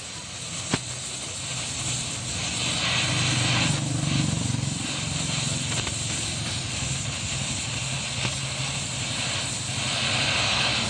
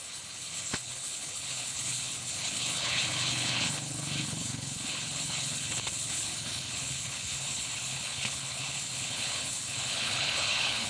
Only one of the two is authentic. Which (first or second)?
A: first